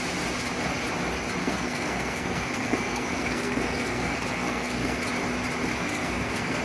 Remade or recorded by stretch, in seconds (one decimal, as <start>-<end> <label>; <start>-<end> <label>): 0.0-1.4 recorded; 1.4-5.0 remade; 5.0-5.7 recorded; 5.7-6.6 remade